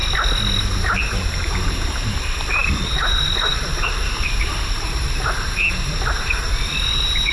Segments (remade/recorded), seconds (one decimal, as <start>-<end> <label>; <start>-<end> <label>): 0.0-1.0 recorded; 1.0-7.3 remade